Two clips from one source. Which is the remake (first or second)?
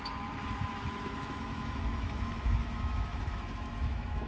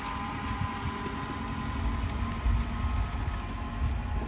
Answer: first